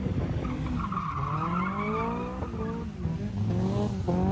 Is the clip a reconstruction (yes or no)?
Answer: no